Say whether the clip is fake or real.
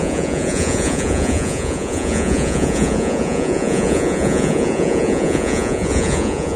fake